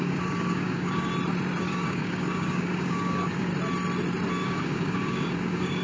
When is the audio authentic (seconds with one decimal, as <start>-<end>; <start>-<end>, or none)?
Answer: 1.1-1.6; 3.5-4.3